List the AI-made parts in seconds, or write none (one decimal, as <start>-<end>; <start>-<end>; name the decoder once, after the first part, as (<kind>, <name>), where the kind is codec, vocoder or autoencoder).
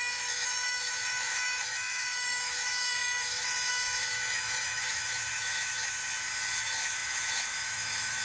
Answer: 0.0-6.0 (autoencoder, DAC-VAE); 6.6-8.2